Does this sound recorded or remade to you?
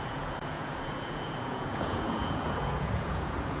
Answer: remade